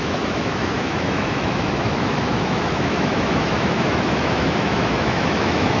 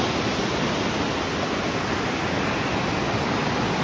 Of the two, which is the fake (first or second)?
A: first